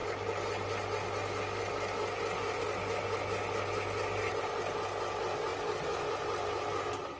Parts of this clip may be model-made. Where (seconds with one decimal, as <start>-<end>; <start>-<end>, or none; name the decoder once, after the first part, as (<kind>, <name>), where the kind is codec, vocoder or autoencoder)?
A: none